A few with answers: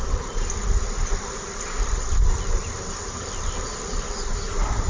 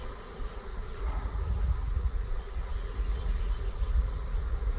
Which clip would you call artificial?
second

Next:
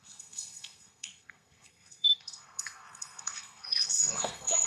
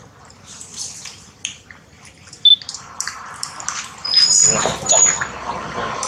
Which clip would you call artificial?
first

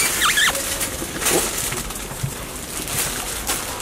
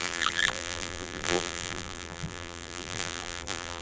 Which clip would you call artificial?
second